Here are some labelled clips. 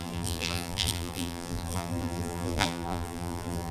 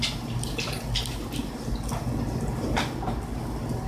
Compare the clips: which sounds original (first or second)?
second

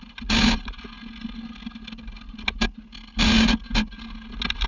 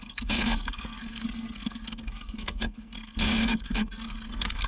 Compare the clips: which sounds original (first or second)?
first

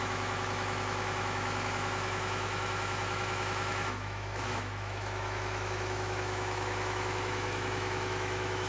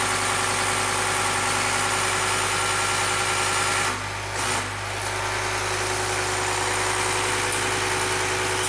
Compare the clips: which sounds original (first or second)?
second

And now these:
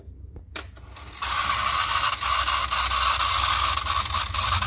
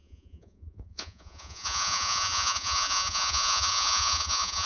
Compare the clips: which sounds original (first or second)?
first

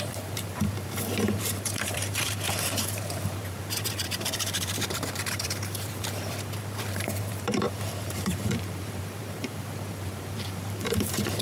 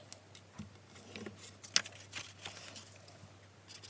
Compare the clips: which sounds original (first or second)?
second